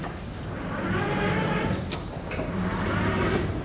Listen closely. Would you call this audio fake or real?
real